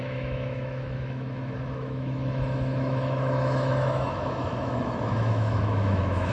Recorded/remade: remade